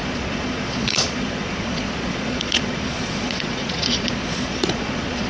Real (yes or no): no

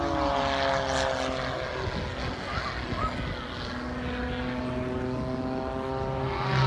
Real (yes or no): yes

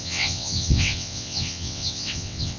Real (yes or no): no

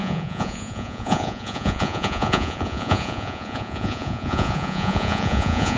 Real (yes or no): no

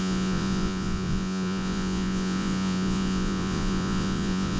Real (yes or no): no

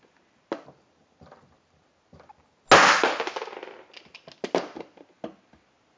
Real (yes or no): yes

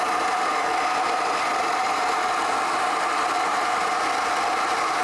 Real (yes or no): yes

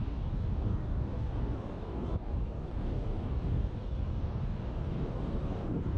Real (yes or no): no